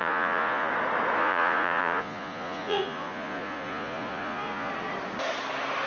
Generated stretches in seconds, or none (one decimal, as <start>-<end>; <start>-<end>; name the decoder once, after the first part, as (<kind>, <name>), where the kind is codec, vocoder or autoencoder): 0.0-0.7 (vocoder, Vocos); 1.2-4.7